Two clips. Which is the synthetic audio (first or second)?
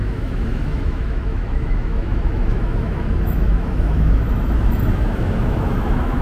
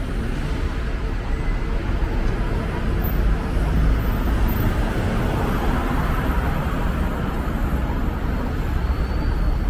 first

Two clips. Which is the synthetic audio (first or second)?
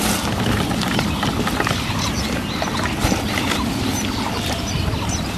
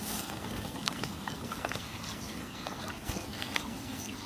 second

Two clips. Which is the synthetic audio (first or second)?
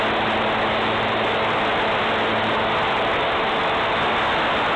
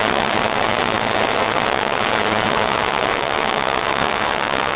second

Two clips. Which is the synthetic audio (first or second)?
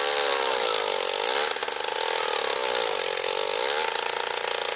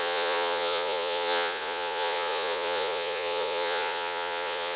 second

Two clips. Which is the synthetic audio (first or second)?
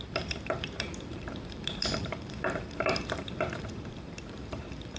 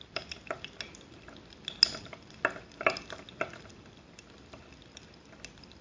first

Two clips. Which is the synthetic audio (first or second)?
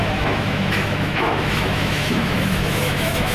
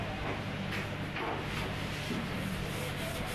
first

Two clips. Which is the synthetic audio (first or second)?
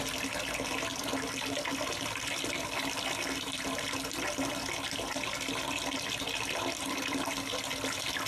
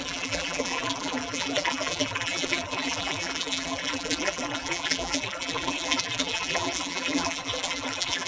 second